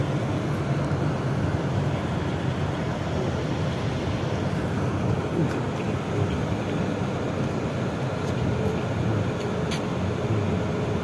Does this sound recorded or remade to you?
recorded